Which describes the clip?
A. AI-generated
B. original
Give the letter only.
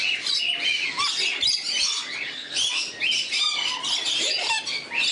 B